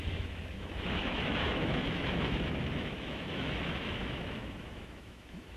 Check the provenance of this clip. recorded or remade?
remade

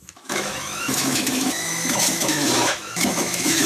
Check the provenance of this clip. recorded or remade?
remade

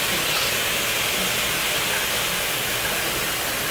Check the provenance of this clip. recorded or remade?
recorded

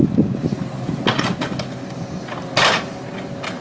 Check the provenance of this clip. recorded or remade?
recorded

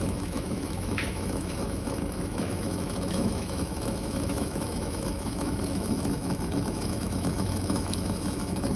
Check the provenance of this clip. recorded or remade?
remade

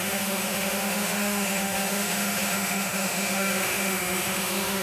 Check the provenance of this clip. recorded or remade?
remade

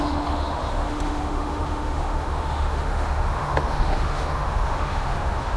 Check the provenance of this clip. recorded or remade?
remade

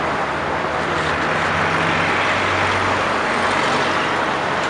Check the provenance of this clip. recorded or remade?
recorded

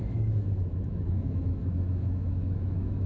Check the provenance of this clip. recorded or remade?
remade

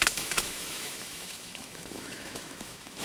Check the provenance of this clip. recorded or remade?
remade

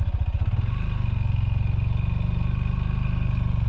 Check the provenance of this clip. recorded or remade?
recorded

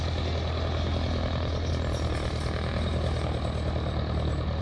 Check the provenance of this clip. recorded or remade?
recorded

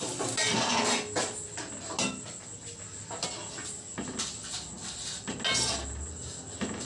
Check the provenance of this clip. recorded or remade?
recorded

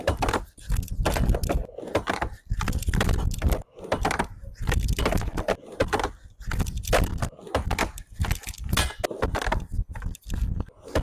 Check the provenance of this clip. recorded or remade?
recorded